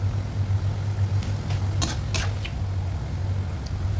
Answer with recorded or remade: recorded